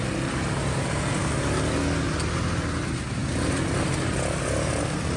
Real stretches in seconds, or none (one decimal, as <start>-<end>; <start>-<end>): 0.0-5.2